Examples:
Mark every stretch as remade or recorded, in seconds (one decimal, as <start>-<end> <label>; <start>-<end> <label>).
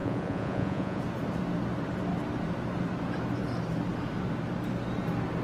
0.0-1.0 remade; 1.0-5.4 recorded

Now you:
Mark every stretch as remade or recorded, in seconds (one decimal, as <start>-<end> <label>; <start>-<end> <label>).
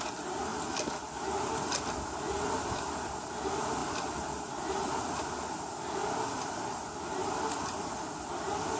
0.0-8.8 recorded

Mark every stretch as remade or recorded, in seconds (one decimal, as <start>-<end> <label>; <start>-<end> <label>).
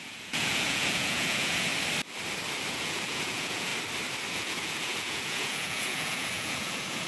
0.0-1.7 remade; 1.7-2.7 recorded; 2.7-3.7 remade; 3.7-4.3 recorded; 4.3-7.1 remade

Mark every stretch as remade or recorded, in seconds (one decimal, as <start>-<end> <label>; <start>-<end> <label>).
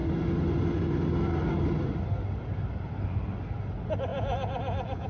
0.0-4.1 recorded; 4.1-5.1 remade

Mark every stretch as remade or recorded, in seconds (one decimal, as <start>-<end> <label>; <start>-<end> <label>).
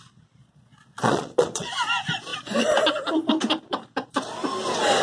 0.0-0.4 recorded; 0.4-1.7 remade; 1.7-5.0 recorded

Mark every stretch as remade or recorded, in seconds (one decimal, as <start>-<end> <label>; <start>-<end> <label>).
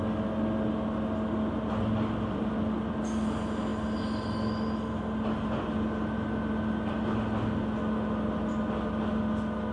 0.0-9.7 recorded